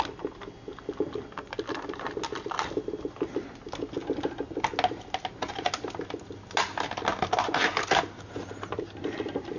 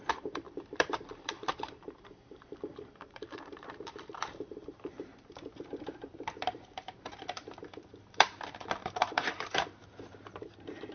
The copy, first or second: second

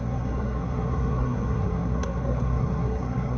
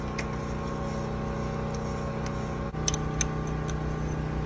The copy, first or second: first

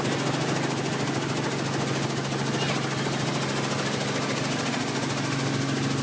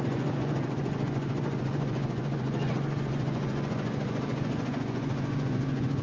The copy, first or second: second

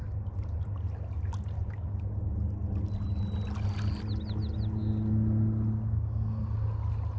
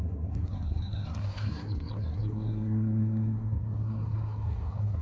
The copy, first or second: second